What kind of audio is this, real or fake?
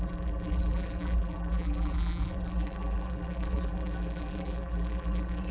fake